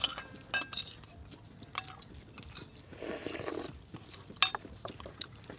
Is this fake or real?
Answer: real